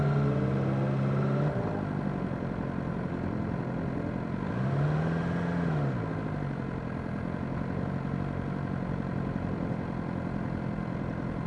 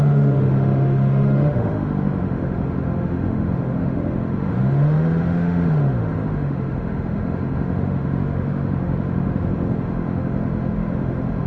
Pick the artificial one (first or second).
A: second